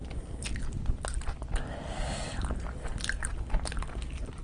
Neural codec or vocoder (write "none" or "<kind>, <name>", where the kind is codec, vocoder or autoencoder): none